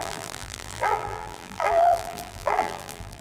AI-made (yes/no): yes